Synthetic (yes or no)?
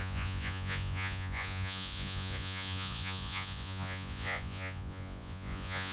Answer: yes